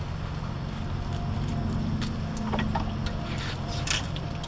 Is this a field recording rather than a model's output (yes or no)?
yes